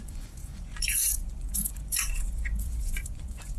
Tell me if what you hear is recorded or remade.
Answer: remade